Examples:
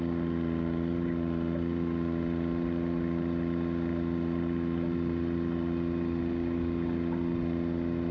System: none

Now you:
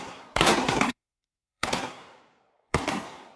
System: codec, SNAC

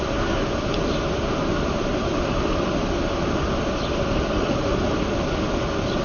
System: none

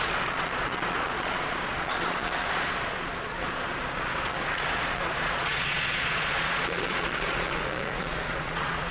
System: vocoder, Vocos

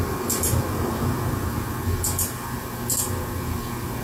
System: none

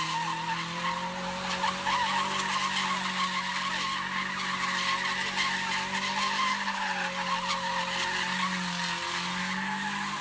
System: none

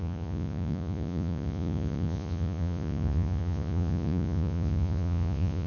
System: vocoder, Vocos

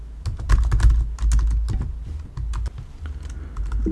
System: none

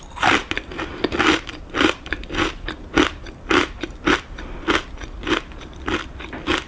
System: vocoder, BigVGAN v2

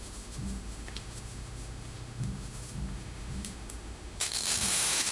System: autoencoder, DAC-VAE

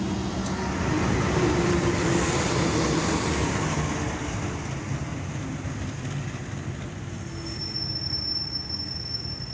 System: none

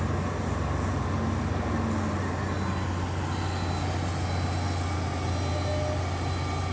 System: none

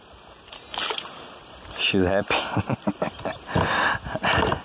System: none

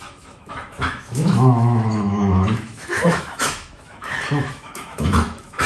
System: autoencoder, DAC-VAE